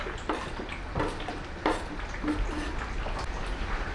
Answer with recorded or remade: recorded